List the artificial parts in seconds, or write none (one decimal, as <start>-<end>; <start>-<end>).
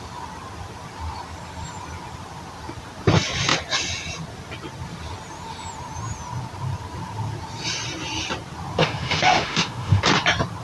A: 8.8-10.0